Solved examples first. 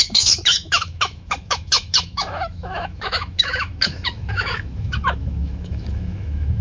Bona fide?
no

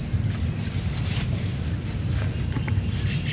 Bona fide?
yes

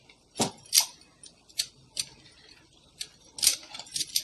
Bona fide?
yes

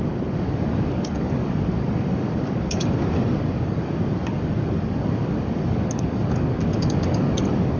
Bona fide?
no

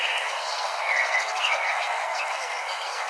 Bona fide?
no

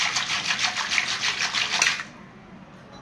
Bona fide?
yes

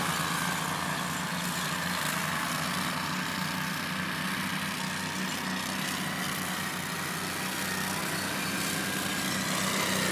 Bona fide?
yes